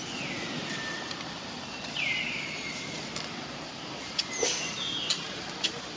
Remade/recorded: recorded